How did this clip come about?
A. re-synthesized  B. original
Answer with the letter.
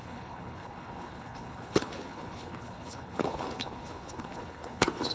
A